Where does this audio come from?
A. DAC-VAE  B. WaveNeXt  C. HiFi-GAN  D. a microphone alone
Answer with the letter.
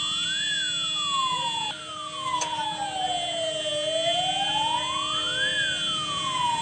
D